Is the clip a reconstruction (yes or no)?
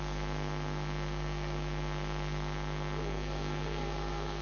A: yes